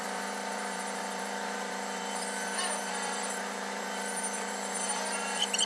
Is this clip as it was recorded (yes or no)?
no